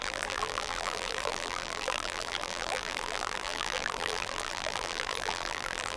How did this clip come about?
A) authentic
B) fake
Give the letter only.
B